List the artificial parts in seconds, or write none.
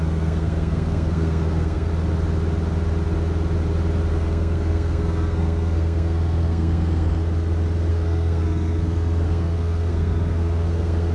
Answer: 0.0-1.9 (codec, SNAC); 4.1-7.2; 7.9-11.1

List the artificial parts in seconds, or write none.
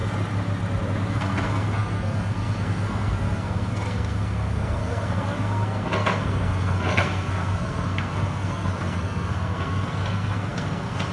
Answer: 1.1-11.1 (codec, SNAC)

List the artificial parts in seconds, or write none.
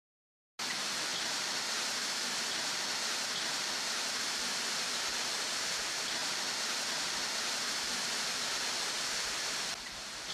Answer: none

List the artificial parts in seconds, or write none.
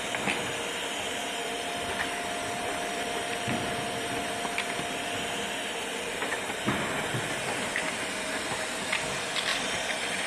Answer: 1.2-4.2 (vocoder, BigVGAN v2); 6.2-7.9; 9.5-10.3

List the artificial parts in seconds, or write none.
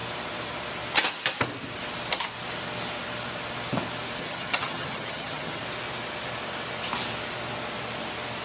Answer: 4.2-5.6 (vocoder, HiFi-GAN)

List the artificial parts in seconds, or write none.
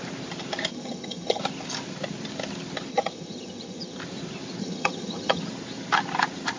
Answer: 0.7-1.4 (vocoder, HiFi-GAN); 2.9-4.0; 4.6-5.4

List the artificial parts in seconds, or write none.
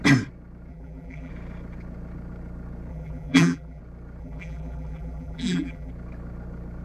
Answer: 0.7-1.3 (vocoder, BigVGAN v2); 2.9-3.8; 4.2-5.9